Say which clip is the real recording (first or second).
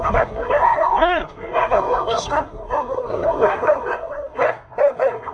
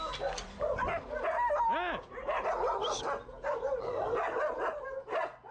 second